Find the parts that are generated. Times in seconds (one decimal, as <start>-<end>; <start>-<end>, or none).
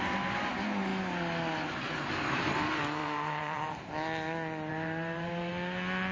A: 3.0-3.9; 4.7-5.5